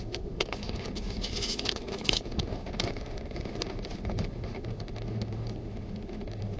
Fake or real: fake